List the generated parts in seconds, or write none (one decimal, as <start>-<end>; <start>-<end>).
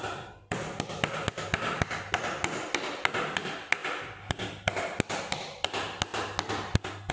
none